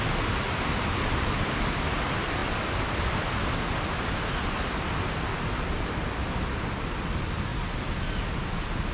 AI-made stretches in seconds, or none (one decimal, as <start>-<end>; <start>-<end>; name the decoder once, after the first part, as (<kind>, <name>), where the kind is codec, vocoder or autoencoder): none